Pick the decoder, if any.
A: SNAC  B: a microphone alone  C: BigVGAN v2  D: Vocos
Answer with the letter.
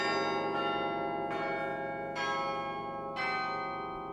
B